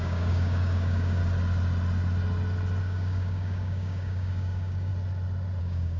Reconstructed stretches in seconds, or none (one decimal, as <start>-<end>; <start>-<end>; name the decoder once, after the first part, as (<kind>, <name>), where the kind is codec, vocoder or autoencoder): 0.0-1.2 (codec, DAC); 2.8-4.9; 5.6-6.0